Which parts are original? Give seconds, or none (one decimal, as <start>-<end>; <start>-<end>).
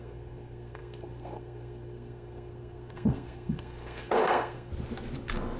4.7-5.6